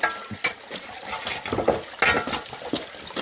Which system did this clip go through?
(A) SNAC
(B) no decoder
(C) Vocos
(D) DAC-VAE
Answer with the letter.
B